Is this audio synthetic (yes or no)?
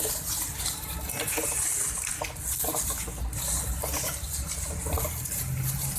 no